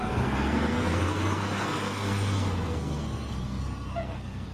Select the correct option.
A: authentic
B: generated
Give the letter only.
B